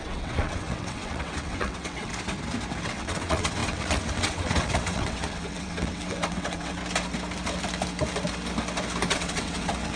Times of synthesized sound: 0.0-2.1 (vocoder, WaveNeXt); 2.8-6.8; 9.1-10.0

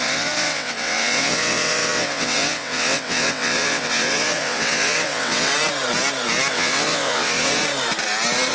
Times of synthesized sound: 0.0-5.5 (vocoder, WaveNeXt); 6.5-7.6

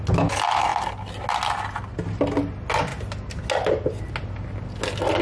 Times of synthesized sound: none

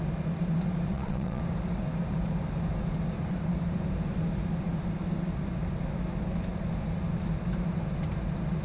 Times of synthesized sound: 0.9-1.4 (vocoder, WaveNeXt)

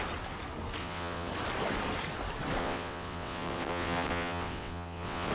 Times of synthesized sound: 0.8-1.3 (vocoder, WaveNeXt); 2.6-5.3